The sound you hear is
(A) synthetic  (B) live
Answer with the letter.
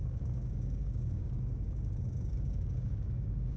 A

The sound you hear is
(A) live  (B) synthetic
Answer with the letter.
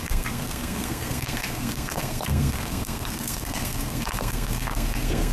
B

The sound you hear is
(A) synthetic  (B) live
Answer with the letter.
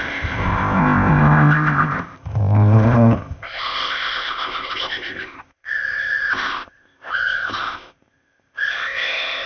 A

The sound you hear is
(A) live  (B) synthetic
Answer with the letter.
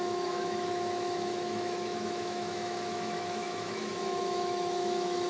B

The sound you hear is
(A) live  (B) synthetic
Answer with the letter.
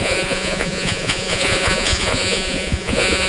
B